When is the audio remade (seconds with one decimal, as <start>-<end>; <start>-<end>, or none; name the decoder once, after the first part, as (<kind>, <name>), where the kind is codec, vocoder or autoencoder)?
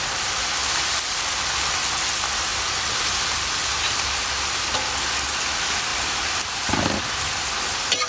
2.5-3.0 (vocoder, BigVGAN v2); 5.9-6.7